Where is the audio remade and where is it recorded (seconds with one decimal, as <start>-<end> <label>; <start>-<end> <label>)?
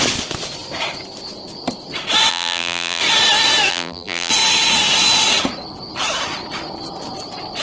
0.0-2.3 recorded; 2.3-3.0 remade; 3.0-3.7 recorded; 3.7-4.3 remade; 4.3-7.6 recorded